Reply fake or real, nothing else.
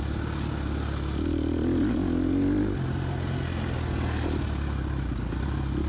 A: real